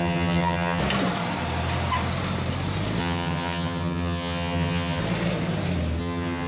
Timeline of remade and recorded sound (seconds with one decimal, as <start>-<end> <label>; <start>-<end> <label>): 0.0-0.8 remade; 0.8-3.0 recorded; 3.0-5.0 remade; 5.0-6.0 recorded; 6.0-6.5 remade